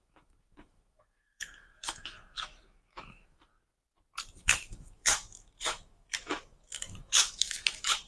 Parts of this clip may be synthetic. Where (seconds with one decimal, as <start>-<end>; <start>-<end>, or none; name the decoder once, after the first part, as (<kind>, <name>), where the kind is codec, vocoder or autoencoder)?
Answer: 0.0-3.5 (autoencoder, DAC-VAE); 4.4-8.1